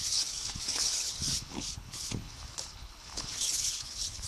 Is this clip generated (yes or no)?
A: yes